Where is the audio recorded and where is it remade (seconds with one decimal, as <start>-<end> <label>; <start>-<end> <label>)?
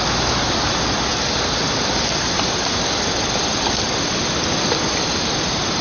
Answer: 0.0-5.8 recorded